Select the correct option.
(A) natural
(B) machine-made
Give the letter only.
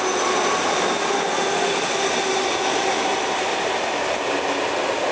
A